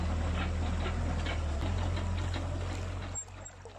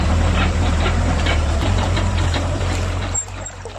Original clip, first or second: first